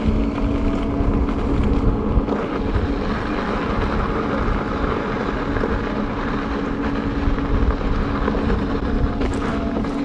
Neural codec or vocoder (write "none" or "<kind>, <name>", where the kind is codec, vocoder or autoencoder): none